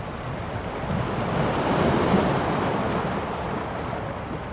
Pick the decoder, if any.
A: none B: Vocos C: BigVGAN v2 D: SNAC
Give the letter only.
A